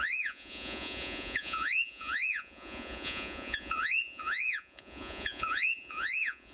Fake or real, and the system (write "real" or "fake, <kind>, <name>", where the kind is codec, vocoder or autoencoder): fake, vocoder, Vocos